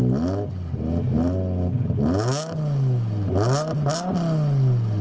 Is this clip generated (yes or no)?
no